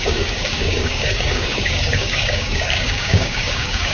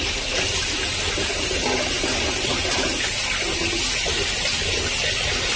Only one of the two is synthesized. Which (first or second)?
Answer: first